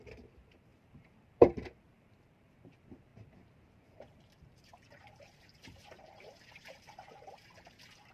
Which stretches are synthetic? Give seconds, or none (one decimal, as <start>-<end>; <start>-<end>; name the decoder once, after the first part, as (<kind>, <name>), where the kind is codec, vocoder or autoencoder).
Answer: 0.0-8.1 (vocoder, BigVGAN v2)